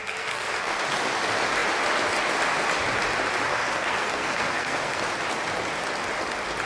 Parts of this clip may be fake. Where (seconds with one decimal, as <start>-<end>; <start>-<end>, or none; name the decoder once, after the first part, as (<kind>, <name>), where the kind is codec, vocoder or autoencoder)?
0.0-0.8 (codec, SNAC); 3.5-5.0